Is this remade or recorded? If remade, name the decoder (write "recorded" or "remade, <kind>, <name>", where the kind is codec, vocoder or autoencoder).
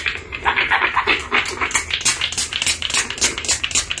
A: recorded